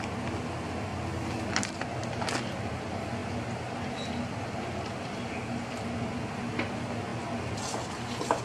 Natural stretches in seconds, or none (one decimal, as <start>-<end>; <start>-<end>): 0.0-8.4